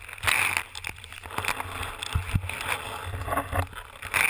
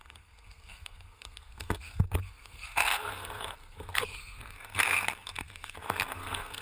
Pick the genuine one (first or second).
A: first